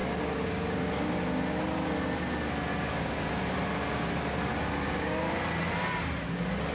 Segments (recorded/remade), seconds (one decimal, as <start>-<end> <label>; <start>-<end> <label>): 0.0-1.2 remade; 1.2-2.7 recorded; 2.7-3.3 remade; 3.3-4.5 recorded; 4.5-5.3 remade; 5.3-6.7 recorded